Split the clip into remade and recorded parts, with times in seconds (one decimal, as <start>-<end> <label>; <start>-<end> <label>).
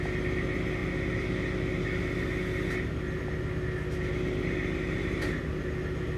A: 0.0-6.2 recorded